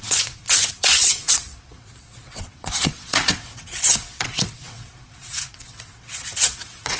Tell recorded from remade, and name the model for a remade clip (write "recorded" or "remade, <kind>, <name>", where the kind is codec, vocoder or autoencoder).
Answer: remade, vocoder, WaveNeXt